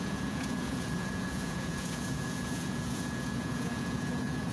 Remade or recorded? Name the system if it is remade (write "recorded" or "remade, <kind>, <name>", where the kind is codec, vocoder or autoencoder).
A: remade, vocoder, Vocos